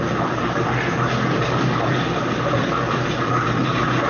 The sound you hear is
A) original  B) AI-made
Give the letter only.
A